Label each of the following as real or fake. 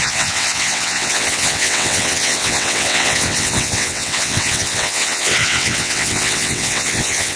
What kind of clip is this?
fake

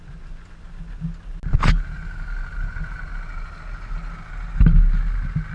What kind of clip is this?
real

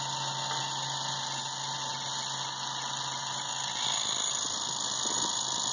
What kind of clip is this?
real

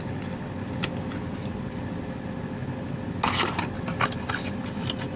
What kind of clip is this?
real